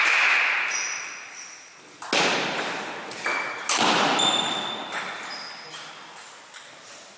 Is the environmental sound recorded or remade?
recorded